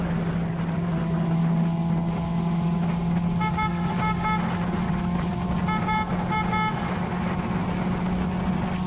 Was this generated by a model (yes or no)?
no